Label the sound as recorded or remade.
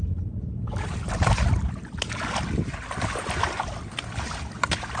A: recorded